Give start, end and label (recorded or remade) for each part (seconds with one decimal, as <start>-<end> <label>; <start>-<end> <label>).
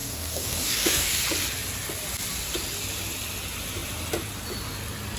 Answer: 0.0-1.2 remade; 1.2-5.2 recorded